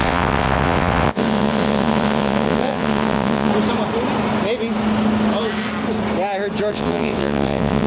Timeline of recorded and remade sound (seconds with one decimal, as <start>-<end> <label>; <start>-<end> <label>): 0.0-3.5 remade; 3.5-6.7 recorded; 6.7-7.9 remade

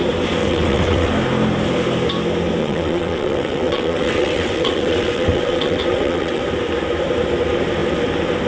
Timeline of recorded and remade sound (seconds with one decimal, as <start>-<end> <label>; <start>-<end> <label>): 0.0-0.4 recorded; 0.4-1.1 remade; 1.1-2.6 recorded; 2.6-6.4 remade; 6.4-8.5 recorded

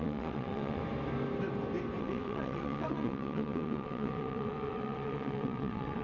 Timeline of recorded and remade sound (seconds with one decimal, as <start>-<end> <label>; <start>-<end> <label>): 0.0-0.8 remade; 0.8-2.0 recorded; 2.0-6.0 remade

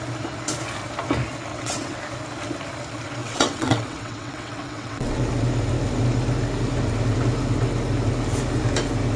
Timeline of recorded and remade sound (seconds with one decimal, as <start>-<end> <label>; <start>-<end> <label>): 0.0-1.5 recorded; 1.5-2.0 remade; 2.0-3.2 recorded; 3.2-5.2 remade; 5.2-9.2 recorded

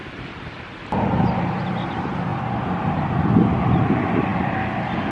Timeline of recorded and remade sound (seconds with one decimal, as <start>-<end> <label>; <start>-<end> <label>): 0.0-5.1 recorded

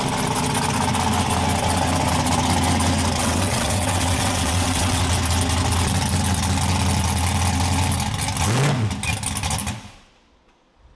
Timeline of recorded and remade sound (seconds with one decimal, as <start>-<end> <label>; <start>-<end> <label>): 0.0-3.2 recorded; 3.2-5.0 remade; 5.0-10.9 recorded